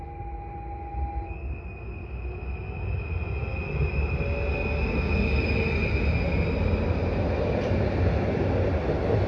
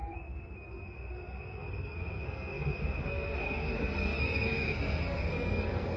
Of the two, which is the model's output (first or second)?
second